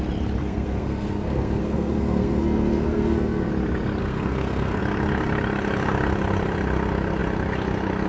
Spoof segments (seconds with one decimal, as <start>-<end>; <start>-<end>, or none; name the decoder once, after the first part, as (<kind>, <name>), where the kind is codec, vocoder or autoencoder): 0.4-3.5 (codec, SNAC); 4.0-4.8